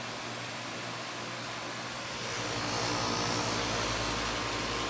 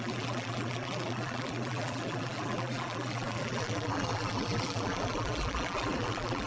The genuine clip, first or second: first